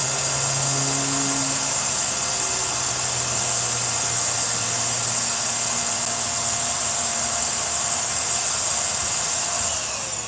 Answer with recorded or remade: recorded